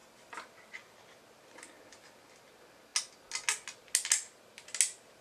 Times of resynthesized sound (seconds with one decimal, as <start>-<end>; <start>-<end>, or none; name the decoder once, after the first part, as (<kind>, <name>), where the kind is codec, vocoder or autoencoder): none